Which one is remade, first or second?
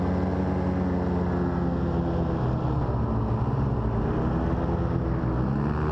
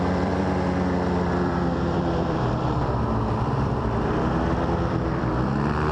second